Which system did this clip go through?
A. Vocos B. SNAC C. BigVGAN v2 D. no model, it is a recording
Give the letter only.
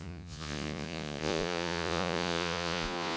A